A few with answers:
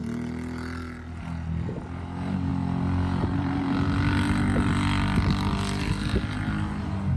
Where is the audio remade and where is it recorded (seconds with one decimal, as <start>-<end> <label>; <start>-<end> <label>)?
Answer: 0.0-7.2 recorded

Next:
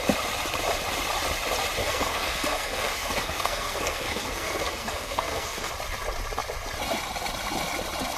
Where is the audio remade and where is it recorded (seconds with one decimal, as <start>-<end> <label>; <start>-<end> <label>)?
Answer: 0.0-1.8 recorded; 1.8-5.7 remade; 5.7-8.2 recorded

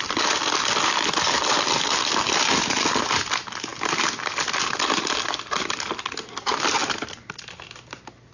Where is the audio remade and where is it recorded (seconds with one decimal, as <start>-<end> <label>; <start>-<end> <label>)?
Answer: 0.0-8.3 recorded

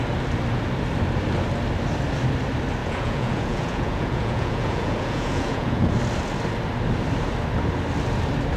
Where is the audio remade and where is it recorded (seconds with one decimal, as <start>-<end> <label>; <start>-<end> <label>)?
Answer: 0.0-2.8 recorded; 2.8-5.9 remade; 5.9-8.6 recorded

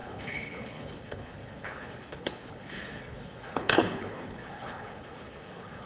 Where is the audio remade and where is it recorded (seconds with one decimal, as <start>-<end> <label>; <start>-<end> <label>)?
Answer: 0.0-5.9 remade

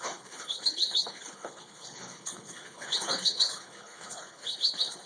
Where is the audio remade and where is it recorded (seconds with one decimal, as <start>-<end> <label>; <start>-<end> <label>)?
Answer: 0.0-5.1 remade

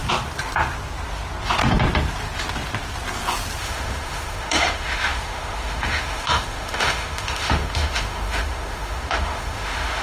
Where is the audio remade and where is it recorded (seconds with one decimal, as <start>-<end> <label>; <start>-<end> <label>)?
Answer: 0.0-3.6 recorded; 3.6-10.0 remade